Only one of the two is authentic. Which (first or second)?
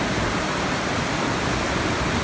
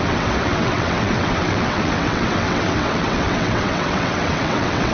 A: first